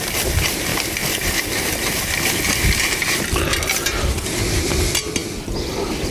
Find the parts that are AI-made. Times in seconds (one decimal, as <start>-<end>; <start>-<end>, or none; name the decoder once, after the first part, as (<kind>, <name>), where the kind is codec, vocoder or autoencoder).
none